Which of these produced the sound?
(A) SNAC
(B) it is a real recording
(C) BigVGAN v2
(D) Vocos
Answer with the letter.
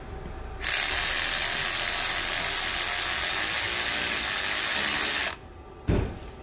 B